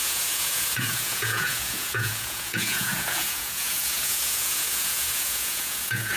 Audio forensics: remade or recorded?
remade